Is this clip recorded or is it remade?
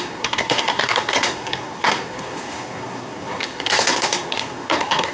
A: remade